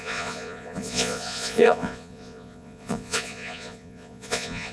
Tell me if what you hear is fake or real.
fake